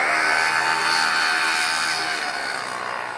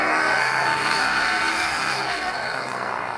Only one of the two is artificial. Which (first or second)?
second